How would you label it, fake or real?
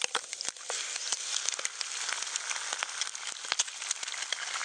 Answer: real